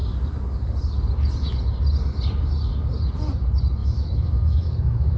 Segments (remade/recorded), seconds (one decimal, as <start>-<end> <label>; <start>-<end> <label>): 0.0-3.8 recorded; 3.8-5.2 remade